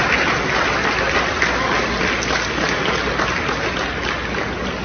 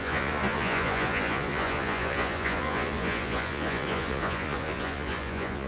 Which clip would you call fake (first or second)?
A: second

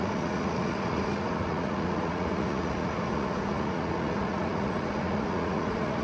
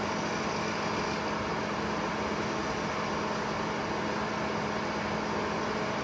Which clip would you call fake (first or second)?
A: first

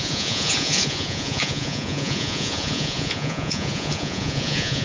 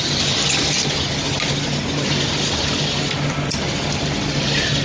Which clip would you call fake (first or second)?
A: first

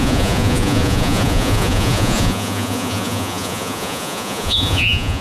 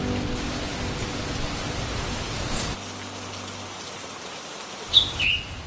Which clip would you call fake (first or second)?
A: first